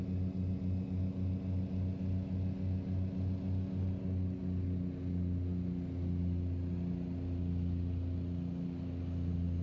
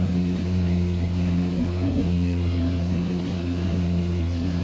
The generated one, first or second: second